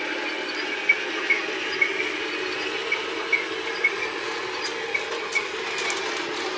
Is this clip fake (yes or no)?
no